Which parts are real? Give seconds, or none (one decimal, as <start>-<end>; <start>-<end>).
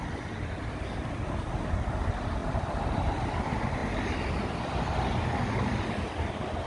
0.0-2.4; 3.4-6.7